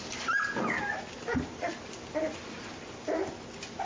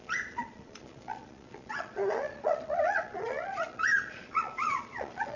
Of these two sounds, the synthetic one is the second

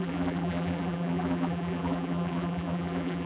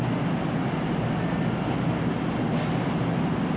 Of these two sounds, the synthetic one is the first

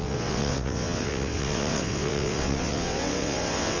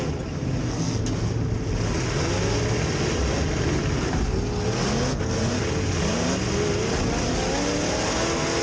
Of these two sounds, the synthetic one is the first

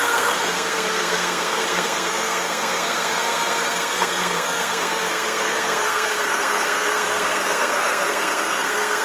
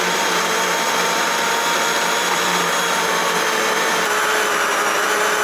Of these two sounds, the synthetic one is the first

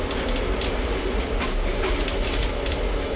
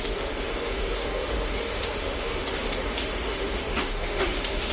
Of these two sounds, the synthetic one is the second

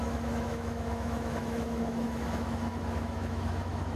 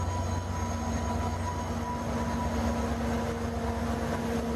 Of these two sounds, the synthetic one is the first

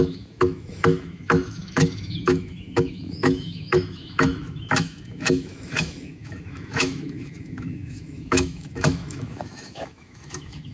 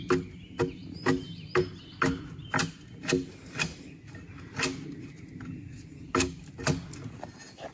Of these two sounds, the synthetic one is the first